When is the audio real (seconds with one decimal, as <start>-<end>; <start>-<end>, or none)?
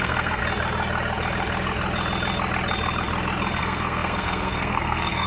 0.4-3.6